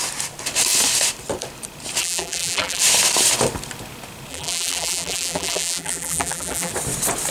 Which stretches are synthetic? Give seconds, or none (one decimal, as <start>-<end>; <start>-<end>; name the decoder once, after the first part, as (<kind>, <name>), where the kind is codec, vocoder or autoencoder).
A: 2.0-2.8 (vocoder, BigVGAN v2); 4.3-6.7